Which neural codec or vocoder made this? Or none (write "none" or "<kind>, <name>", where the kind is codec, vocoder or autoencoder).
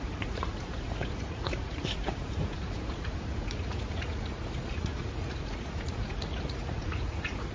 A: vocoder, Vocos